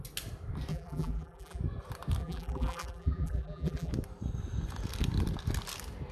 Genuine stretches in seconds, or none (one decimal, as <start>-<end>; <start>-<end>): 0.0-0.7; 1.6-2.2; 3.9-6.1